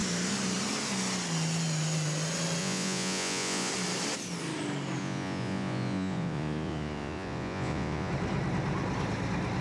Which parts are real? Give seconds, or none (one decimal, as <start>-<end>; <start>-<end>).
0.0-2.6; 3.7-5.0; 8.1-9.6